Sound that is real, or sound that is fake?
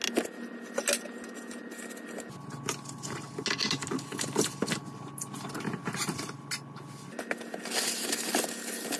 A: real